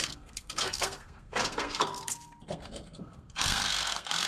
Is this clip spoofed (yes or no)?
yes